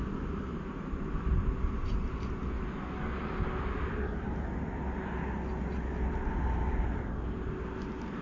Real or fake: real